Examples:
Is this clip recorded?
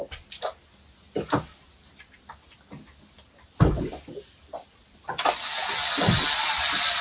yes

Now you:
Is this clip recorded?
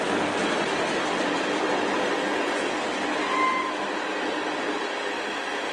yes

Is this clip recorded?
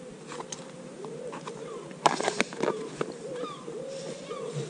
yes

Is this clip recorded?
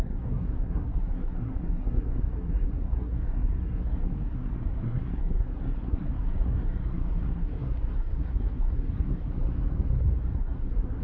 no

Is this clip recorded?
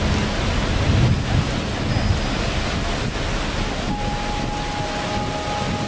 yes